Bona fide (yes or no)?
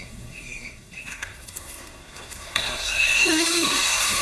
no